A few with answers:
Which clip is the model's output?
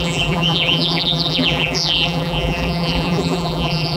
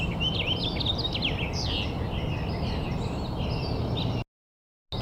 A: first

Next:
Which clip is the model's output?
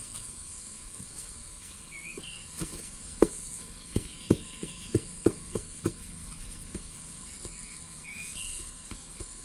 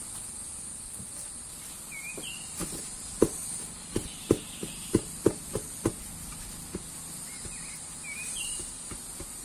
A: first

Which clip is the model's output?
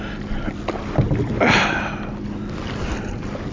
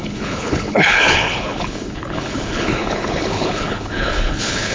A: second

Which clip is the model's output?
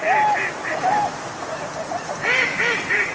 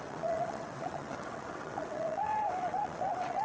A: second